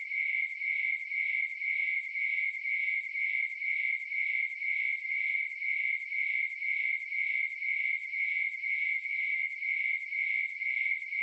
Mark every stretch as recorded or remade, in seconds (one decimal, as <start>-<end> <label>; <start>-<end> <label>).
0.0-1.8 recorded; 1.8-3.3 remade; 3.3-8.0 recorded; 8.0-9.1 remade; 9.1-11.2 recorded